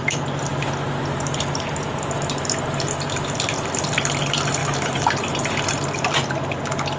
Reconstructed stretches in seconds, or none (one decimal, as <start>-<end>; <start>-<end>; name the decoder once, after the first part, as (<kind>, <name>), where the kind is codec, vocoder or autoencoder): 4.6-5.1 (autoencoder, DAC-VAE)